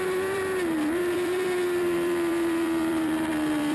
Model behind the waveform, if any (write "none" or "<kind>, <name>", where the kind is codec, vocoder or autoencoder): vocoder, BigVGAN v2